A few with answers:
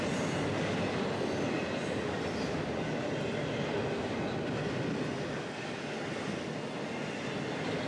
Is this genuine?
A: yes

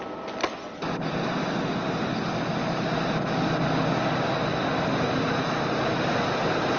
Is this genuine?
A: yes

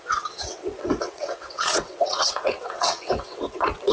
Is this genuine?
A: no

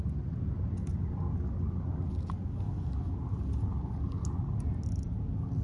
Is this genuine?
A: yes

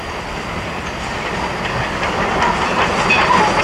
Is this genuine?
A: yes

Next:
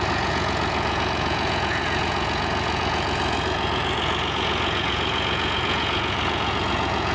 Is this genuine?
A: no